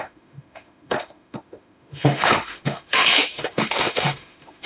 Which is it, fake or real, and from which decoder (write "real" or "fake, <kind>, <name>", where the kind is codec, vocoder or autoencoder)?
fake, autoencoder, DAC-VAE